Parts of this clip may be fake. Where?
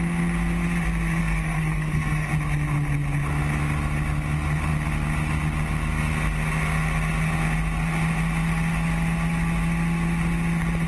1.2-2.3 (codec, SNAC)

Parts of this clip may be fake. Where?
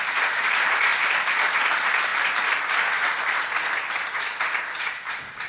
0.0-5.5 (vocoder, BigVGAN v2)